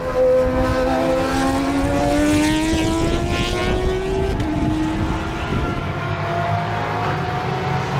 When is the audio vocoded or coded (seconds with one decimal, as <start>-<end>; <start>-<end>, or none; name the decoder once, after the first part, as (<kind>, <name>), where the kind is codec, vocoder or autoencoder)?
5.5-6.7 (codec, DAC)